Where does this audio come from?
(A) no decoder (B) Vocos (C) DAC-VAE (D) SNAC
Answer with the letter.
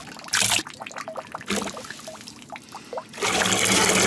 A